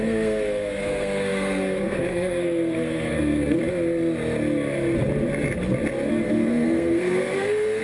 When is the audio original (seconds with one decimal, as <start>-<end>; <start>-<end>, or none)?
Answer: 3.6-6.1